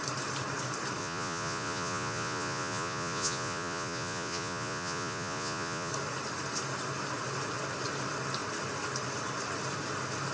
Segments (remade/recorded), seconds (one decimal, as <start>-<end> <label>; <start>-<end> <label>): 0.0-1.0 recorded; 1.0-5.9 remade; 5.9-10.3 recorded